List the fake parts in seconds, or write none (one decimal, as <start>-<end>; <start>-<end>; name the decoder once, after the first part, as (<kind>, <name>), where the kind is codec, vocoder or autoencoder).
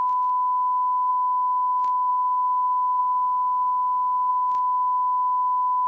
none